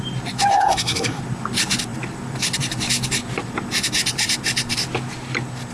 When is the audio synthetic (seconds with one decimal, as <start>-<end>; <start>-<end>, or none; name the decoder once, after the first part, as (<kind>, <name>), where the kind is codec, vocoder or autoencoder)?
0.5-1.2 (codec, SNAC)